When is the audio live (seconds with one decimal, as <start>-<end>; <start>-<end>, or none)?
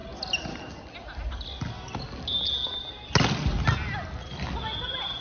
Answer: 0.0-5.2